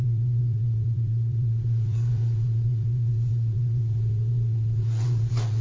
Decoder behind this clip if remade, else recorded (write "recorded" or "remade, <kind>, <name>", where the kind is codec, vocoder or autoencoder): remade, vocoder, WaveNeXt